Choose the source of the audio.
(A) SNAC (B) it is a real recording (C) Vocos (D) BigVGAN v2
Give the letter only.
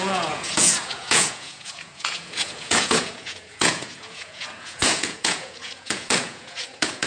C